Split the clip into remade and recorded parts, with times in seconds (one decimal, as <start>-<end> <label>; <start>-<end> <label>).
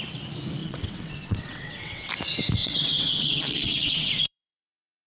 0.0-0.6 recorded; 0.6-2.1 remade; 2.1-2.6 recorded; 2.6-5.1 remade